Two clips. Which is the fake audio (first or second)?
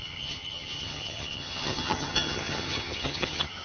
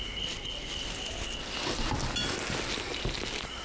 first